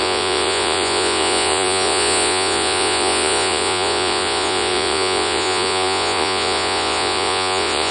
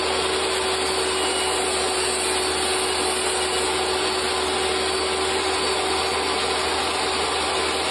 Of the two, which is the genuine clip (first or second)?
second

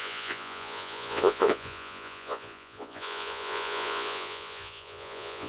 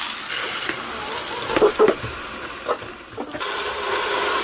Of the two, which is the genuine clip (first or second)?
second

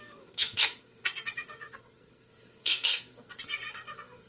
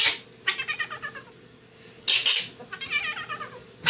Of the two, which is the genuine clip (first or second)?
second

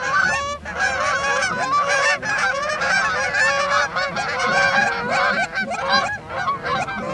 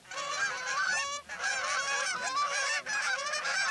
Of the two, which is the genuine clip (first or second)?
first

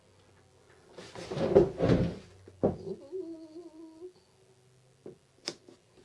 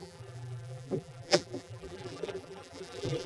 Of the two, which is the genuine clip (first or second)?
first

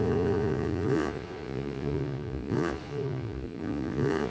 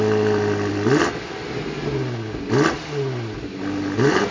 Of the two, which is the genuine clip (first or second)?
second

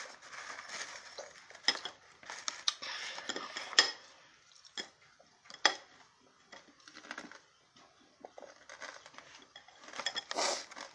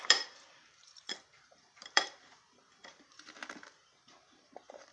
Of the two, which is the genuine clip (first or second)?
first